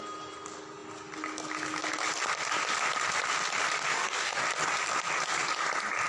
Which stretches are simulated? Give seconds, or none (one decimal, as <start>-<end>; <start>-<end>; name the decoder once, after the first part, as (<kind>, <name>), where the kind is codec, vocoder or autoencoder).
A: 3.9-4.4 (codec, DAC)